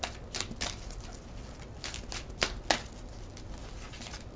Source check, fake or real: real